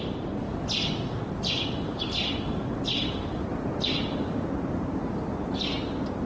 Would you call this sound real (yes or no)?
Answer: yes